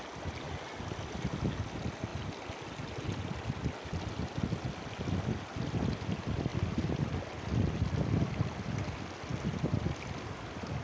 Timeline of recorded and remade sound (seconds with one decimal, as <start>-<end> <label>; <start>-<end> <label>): 0.0-10.8 recorded

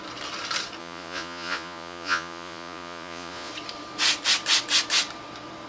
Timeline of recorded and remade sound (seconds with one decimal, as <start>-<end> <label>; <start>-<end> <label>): 0.0-0.8 recorded; 0.8-3.5 remade; 3.5-5.7 recorded

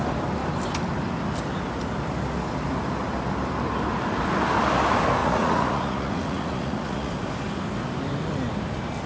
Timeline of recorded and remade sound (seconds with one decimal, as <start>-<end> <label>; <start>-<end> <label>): 0.0-5.2 recorded; 5.2-7.1 remade; 7.1-9.1 recorded

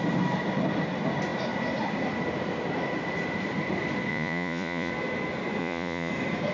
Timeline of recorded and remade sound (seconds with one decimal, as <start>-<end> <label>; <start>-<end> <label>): 0.0-4.1 recorded; 4.1-4.9 remade; 4.9-5.6 recorded; 5.6-6.1 remade; 6.1-6.5 recorded